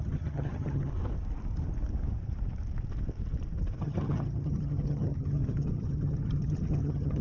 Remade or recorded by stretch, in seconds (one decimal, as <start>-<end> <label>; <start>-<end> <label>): 0.0-0.9 remade; 0.9-3.8 recorded; 3.8-7.2 remade

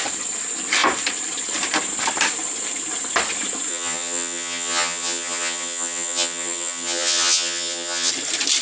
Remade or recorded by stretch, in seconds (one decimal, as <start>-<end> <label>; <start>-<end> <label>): 0.0-3.7 recorded; 3.7-8.1 remade; 8.1-8.6 recorded

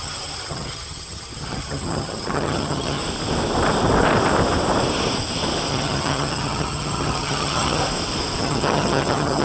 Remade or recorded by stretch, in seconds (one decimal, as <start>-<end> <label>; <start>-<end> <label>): 0.0-3.0 remade; 3.0-5.7 recorded; 5.7-7.8 remade; 7.8-8.4 recorded; 8.4-9.4 remade

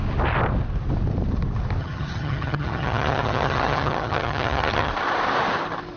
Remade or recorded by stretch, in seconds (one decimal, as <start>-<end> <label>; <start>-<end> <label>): 0.0-1.8 recorded; 1.8-4.9 remade; 4.9-6.0 recorded